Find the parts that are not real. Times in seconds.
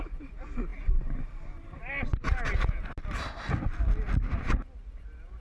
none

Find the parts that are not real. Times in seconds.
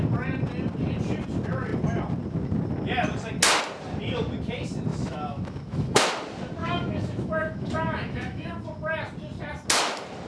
4.9-6.1 (autoencoder, DAC-VAE); 6.6-8.6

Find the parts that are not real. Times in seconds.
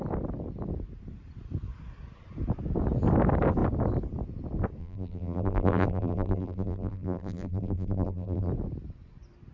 4.8-8.5 (vocoder, BigVGAN v2)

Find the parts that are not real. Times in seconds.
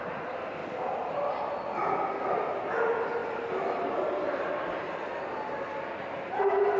0.6-1.3 (vocoder, BigVGAN v2); 3.2-4.4